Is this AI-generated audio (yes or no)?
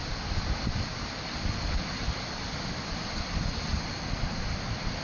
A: no